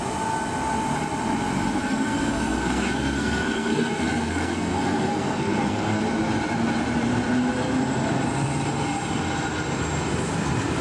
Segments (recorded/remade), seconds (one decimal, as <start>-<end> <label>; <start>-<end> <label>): 0.0-1.8 recorded; 1.8-6.0 remade; 6.0-10.8 recorded